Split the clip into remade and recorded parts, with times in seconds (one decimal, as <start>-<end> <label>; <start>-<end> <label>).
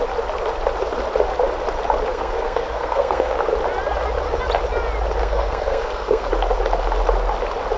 0.0-2.1 recorded; 2.1-3.3 remade; 3.3-5.2 recorded; 5.2-6.3 remade; 6.3-7.8 recorded